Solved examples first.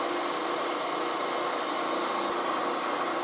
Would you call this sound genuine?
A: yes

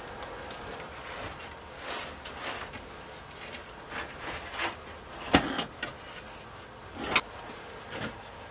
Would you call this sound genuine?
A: yes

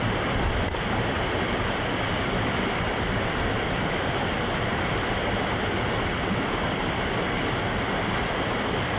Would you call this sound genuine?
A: yes